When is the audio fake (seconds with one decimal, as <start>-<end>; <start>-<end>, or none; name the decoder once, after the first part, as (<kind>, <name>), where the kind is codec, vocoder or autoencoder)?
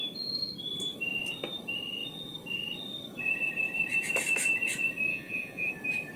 5.1-5.7 (vocoder, Vocos)